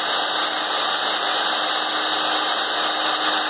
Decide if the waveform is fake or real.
real